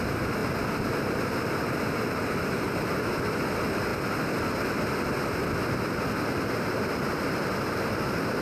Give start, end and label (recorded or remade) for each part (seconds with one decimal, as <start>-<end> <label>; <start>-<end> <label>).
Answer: 0.0-8.4 recorded